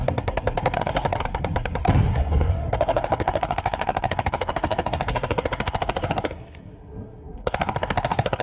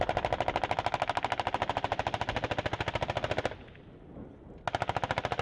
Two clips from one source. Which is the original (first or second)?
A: second